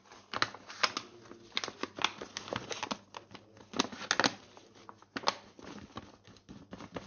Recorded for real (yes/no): yes